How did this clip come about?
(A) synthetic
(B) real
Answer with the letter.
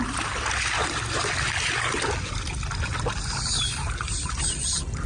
B